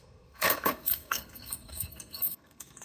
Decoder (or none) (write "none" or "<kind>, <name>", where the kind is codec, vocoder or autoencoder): codec, SNAC